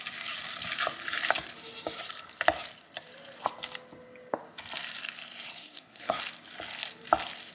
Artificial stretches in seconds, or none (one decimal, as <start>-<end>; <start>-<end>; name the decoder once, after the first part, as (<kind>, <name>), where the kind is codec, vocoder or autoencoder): 5.6-6.2 (codec, SNAC)